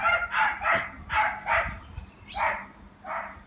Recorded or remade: remade